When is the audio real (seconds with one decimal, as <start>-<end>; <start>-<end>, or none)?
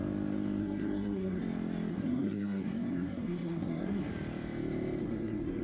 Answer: 0.0-0.6; 1.4-1.9; 4.1-5.0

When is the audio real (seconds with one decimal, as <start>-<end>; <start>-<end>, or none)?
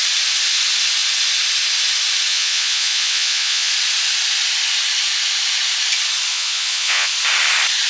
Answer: 0.0-2.3; 3.7-6.3; 7.1-7.9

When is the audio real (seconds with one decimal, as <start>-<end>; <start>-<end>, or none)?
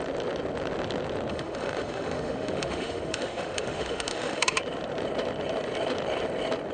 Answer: 0.0-1.3; 4.6-6.7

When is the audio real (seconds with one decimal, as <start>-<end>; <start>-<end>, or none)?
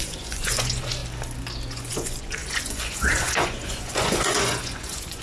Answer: 1.0-1.7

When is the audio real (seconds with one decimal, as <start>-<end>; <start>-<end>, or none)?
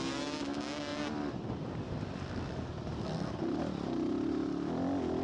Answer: 0.0-5.2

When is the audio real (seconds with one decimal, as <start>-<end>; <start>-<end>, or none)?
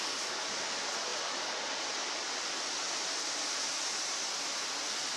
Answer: 0.0-1.1; 3.9-5.2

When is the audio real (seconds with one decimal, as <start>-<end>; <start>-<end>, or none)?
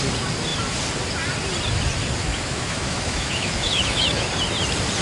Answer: 0.0-2.3; 4.3-5.0